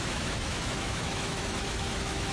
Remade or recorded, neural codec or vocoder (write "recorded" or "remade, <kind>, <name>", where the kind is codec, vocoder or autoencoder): remade, autoencoder, DAC-VAE